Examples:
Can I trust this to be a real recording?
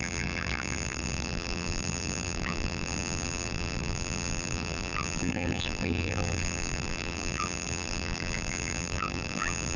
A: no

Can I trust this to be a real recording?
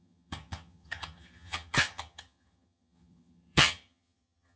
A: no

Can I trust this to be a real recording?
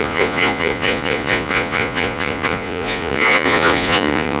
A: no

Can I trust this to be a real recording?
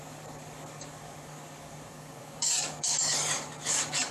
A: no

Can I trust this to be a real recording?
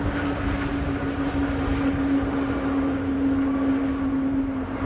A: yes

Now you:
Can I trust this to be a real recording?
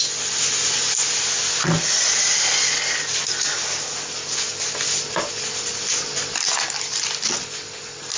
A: yes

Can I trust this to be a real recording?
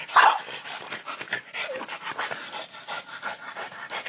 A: yes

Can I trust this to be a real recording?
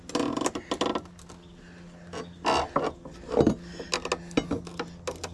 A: yes